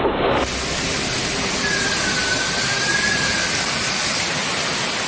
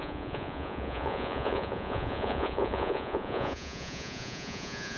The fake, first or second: second